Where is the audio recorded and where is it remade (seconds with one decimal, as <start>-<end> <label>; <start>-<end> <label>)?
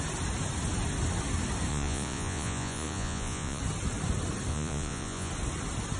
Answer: 0.0-1.7 recorded; 1.7-3.6 remade; 3.6-4.5 recorded; 4.5-5.3 remade; 5.3-6.0 recorded